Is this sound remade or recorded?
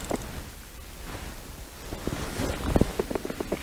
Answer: recorded